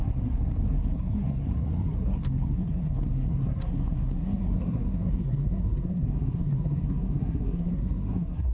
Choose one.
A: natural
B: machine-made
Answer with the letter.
B